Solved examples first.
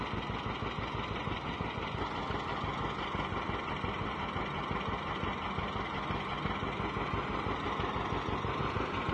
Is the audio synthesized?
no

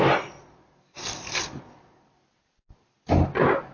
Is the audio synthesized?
no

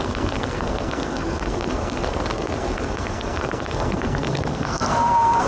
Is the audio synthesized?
yes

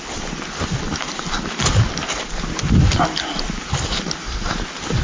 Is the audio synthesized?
no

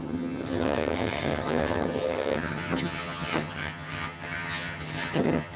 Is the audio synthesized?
yes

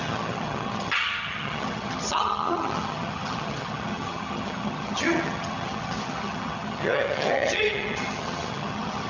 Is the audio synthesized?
yes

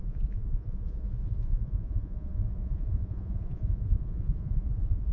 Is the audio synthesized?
yes